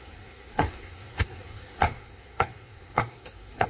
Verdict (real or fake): fake